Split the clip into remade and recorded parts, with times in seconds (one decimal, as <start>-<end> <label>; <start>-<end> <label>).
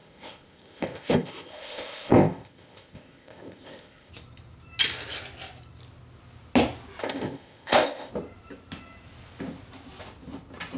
0.0-4.1 remade; 4.1-7.0 recorded; 7.0-8.1 remade; 8.1-10.8 recorded